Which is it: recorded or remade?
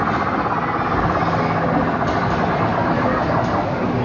recorded